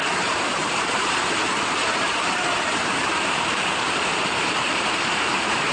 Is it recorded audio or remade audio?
remade